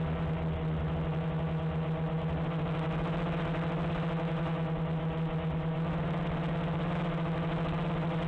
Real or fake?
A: real